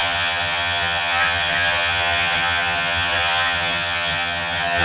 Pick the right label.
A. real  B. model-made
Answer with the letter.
B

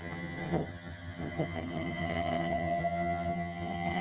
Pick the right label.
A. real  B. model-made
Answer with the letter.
B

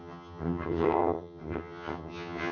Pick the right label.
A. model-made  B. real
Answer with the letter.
A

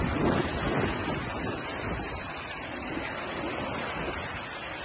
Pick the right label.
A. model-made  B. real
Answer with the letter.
B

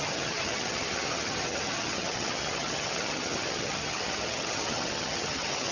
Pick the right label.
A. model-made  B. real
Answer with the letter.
A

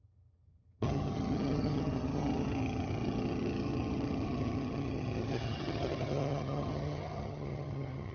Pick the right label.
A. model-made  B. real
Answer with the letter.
A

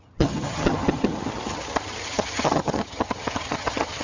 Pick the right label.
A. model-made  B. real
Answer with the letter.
A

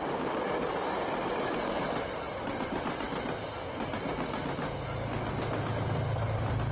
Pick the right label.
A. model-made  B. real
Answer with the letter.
B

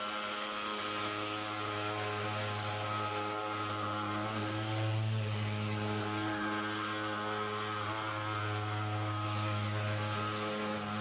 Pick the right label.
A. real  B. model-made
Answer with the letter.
A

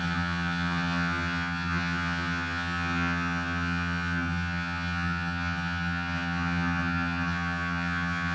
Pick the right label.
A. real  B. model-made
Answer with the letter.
B